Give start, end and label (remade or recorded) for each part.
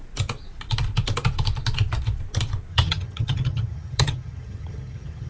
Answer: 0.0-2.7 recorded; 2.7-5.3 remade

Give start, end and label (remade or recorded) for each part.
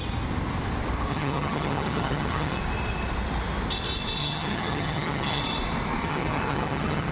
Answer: 0.0-1.1 recorded; 1.1-2.6 remade; 2.6-4.2 recorded; 4.2-5.4 remade; 5.4-6.0 recorded; 6.0-7.1 remade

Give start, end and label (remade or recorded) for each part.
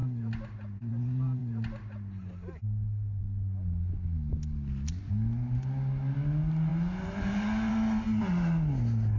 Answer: 0.0-9.2 recorded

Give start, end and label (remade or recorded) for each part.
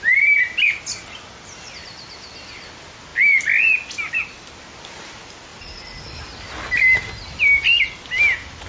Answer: 0.0-8.7 recorded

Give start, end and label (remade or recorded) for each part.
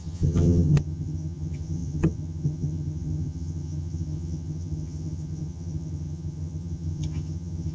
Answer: 0.0-7.7 remade